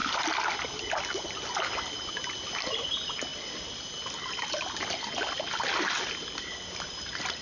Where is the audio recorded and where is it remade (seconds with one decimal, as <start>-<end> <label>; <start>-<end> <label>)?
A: 0.0-7.4 recorded